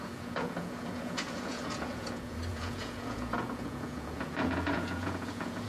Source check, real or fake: fake